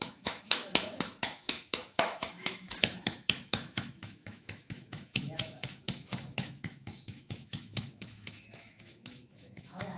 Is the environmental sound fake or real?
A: fake